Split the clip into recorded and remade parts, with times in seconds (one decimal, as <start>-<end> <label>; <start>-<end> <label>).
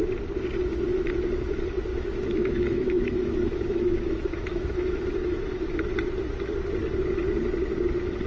0.0-1.9 recorded; 1.9-5.8 remade; 5.8-8.3 recorded